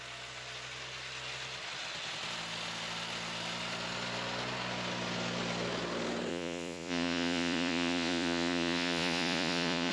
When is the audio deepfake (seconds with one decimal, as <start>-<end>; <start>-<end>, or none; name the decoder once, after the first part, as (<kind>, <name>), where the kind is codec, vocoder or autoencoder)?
6.3-9.9 (vocoder, Vocos)